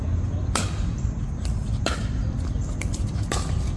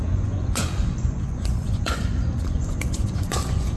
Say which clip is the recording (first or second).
first